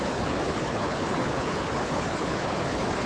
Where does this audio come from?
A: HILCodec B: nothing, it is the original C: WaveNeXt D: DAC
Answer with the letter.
A